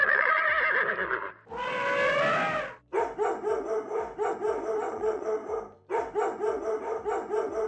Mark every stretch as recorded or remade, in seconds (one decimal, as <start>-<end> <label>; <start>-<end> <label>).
0.0-0.5 remade; 0.5-4.9 recorded; 4.9-5.4 remade; 5.4-7.7 recorded